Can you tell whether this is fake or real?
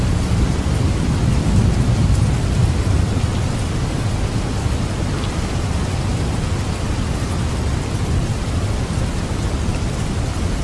real